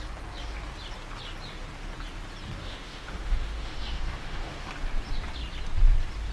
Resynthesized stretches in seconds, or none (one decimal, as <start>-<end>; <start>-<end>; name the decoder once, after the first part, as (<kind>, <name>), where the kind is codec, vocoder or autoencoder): 2.6-4.7 (autoencoder, DAC-VAE)

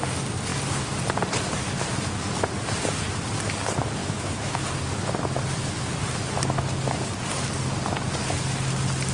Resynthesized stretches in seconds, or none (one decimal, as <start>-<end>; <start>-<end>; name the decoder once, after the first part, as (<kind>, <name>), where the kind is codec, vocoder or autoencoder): 4.0-4.6 (autoencoder, DAC-VAE)

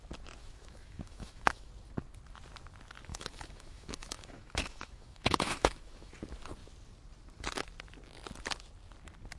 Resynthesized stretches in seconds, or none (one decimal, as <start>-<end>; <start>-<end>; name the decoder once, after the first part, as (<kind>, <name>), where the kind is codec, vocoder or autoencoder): 0.4-1.7 (autoencoder, DAC-VAE); 3.1-6.1

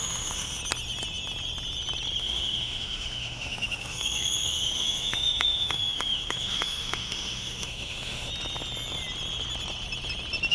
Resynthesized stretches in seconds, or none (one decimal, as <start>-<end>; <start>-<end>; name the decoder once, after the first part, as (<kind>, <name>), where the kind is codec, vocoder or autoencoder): 0.0-0.6 (autoencoder, DAC-VAE); 2.2-8.3

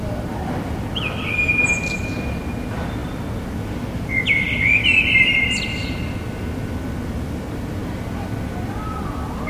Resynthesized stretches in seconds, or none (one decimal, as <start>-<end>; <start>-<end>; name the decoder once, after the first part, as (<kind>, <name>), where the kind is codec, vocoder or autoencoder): none